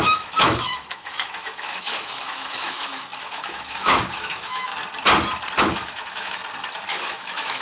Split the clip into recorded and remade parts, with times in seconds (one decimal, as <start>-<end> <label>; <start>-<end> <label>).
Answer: 0.0-4.7 remade; 4.7-5.6 recorded; 5.6-6.4 remade; 6.4-6.9 recorded; 6.9-7.6 remade

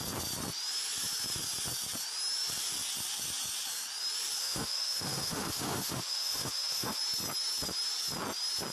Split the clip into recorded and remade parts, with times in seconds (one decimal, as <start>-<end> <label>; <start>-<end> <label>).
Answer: 0.0-4.4 recorded; 4.4-7.0 remade; 7.0-8.7 recorded